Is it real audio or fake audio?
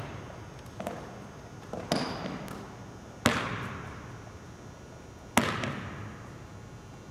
real